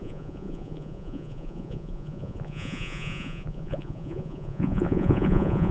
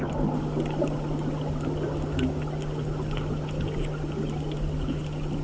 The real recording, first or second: second